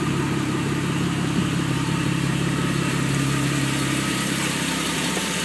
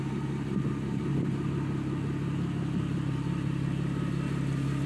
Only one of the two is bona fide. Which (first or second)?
second